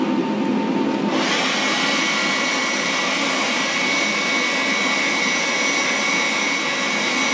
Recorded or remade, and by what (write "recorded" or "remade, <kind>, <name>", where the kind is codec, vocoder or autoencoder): recorded